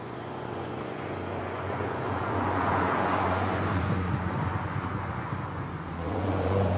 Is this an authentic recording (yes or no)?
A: no